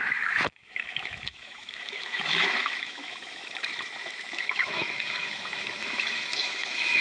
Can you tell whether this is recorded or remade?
remade